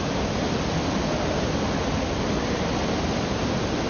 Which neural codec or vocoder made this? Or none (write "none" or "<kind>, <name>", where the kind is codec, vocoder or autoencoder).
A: none